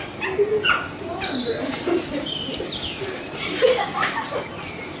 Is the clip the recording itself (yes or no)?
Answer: no